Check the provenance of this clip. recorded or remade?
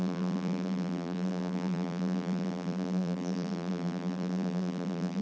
remade